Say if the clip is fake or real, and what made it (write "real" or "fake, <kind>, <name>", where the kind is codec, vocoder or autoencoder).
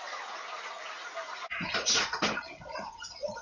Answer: fake, vocoder, Vocos